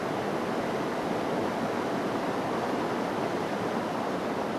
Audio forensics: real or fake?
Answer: real